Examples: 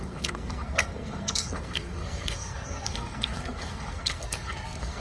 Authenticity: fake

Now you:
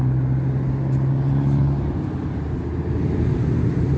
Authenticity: real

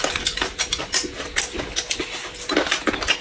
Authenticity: real